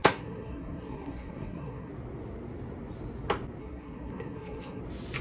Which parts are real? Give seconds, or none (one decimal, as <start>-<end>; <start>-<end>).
1.9-3.6; 4.8-5.2